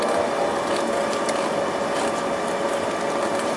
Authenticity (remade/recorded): recorded